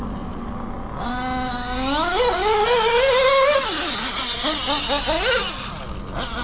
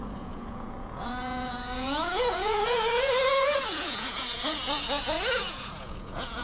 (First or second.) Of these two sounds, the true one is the first